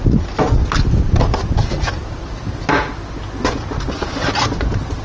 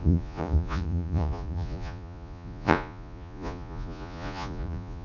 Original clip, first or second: first